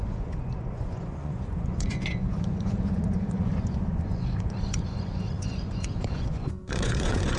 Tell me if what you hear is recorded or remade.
remade